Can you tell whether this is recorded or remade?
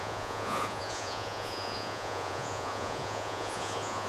remade